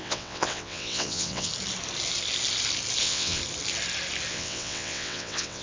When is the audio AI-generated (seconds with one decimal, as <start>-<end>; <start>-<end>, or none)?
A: 0.0-1.5; 3.0-3.4; 4.3-5.6